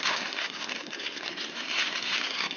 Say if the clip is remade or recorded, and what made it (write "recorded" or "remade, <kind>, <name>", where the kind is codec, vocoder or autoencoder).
remade, codec, SNAC